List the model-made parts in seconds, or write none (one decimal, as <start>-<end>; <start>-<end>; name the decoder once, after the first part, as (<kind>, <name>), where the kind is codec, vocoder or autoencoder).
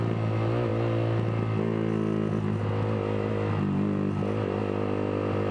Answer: none